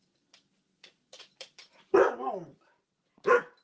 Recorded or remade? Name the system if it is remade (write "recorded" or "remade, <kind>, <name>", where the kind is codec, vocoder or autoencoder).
recorded